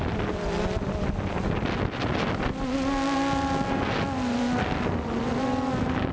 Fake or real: real